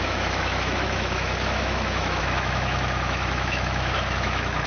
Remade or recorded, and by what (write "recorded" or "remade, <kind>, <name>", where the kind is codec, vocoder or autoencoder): remade, autoencoder, DAC-VAE